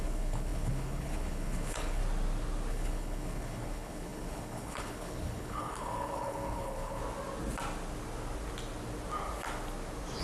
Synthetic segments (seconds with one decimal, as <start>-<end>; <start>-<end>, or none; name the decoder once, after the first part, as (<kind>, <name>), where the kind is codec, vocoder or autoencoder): 0.0-2.0 (codec, HILCodec); 2.7-7.0